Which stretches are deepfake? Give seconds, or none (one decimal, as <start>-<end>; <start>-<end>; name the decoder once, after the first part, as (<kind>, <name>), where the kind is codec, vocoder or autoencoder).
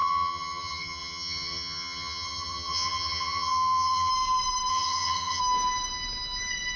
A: 0.0-4.1 (vocoder, HiFi-GAN); 4.7-5.4